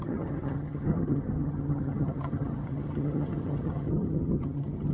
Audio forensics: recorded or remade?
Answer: remade